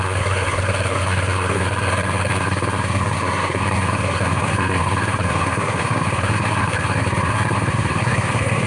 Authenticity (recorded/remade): remade